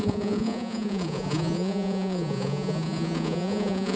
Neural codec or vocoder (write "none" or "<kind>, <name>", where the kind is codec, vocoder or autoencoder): vocoder, Vocos